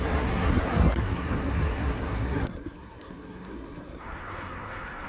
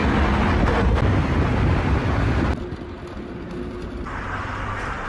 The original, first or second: second